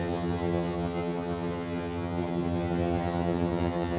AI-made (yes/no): yes